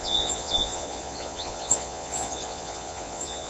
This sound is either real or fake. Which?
fake